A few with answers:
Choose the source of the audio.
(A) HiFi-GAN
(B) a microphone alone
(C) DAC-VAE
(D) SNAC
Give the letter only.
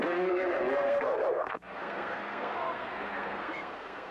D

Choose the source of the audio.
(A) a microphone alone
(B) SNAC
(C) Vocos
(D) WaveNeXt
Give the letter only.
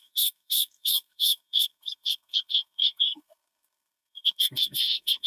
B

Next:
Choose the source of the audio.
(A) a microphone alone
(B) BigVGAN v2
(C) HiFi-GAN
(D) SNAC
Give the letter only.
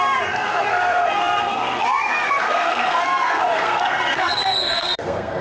D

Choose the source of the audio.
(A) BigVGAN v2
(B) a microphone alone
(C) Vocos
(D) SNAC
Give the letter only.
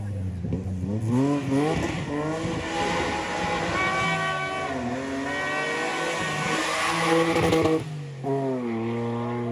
B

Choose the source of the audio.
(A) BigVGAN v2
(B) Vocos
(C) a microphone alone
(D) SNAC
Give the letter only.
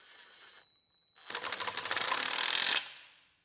C